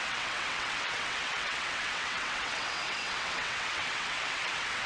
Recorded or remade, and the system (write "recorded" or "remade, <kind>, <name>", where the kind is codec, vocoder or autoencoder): remade, vocoder, WaveNeXt